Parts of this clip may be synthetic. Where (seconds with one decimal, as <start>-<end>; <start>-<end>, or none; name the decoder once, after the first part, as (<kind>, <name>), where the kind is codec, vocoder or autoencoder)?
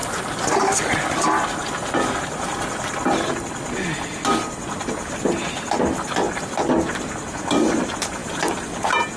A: none